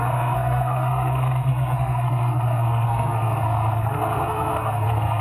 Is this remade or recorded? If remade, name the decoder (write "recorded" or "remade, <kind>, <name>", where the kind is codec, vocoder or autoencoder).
remade, codec, SNAC